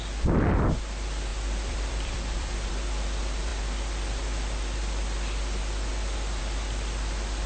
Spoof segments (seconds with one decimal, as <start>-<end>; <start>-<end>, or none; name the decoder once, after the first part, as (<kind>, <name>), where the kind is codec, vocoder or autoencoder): 1.3-2.7 (vocoder, BigVGAN v2)